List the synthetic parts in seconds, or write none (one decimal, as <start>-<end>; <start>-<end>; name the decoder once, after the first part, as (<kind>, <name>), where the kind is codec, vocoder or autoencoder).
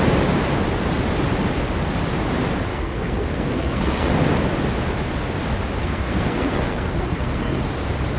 2.7-4.1 (codec, SNAC); 5.8-7.6